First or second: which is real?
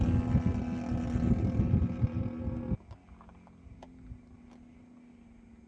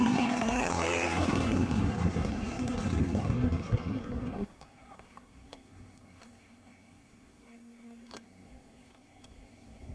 first